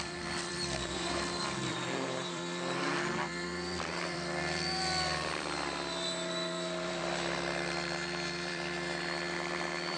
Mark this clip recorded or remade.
remade